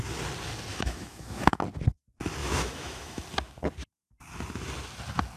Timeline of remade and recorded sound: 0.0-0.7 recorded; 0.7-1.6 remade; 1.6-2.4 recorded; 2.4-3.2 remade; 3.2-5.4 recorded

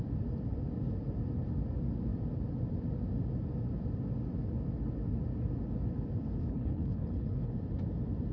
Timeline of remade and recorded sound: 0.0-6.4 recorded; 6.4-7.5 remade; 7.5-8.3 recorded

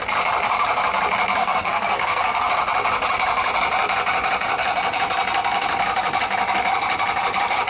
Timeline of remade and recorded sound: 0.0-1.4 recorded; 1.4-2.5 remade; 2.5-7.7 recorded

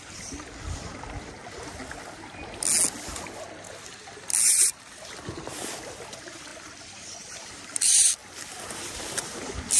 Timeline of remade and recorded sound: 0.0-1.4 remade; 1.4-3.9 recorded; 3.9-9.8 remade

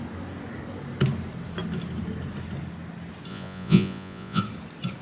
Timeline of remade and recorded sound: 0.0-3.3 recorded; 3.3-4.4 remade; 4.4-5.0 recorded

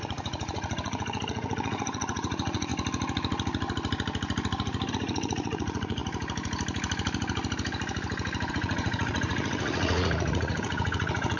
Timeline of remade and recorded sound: 0.0-2.7 remade; 2.7-4.9 recorded; 4.9-6.0 remade; 6.0-8.5 recorded; 8.5-11.4 remade

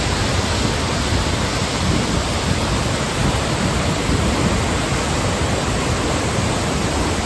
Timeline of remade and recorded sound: 0.0-7.3 recorded

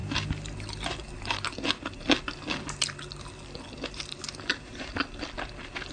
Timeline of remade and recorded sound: 0.0-5.9 recorded